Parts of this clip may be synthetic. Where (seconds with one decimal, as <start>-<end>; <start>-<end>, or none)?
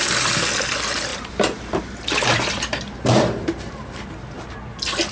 1.1-4.2